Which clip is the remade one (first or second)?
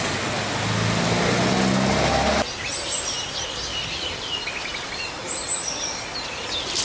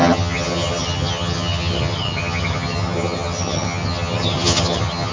second